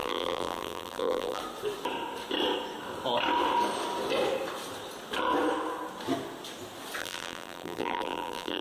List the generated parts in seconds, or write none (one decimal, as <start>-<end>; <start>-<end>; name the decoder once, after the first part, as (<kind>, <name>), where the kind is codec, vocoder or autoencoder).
0.0-1.4 (vocoder, BigVGAN v2); 7.0-8.6